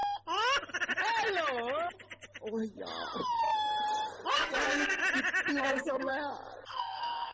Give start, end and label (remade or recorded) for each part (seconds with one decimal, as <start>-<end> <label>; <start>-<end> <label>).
0.0-4.3 recorded; 4.3-5.0 remade; 5.0-5.6 recorded; 5.6-6.1 remade; 6.1-6.7 recorded; 6.7-7.3 remade